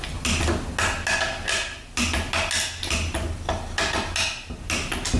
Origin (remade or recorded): recorded